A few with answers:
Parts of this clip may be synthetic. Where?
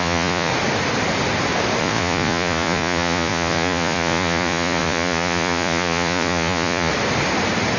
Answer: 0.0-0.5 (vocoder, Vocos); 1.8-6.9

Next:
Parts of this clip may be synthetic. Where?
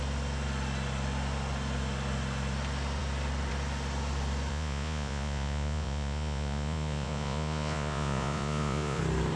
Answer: 4.5-9.0 (vocoder, Vocos)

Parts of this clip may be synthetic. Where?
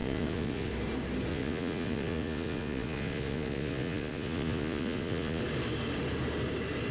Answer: 0.0-0.7 (vocoder, Vocos); 1.3-5.4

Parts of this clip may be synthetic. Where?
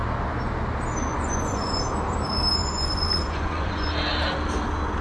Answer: 1.1-1.8 (vocoder, Vocos); 2.6-3.9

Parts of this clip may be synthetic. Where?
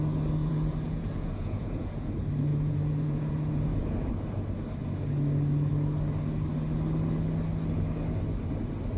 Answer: 0.4-2.1 (vocoder, Vocos); 2.5-4.1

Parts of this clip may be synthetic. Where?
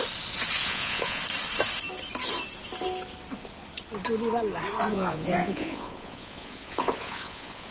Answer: 0.6-1.2 (vocoder, Vocos); 4.9-7.7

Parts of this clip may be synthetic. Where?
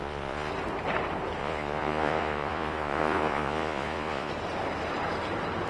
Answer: 0.0-0.5 (vocoder, Vocos); 1.4-4.3